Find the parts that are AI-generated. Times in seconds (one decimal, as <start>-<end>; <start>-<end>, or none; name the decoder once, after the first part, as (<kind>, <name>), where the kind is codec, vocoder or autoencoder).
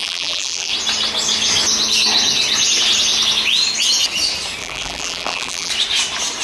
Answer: 0.0-0.7 (vocoder, BigVGAN v2); 4.6-5.7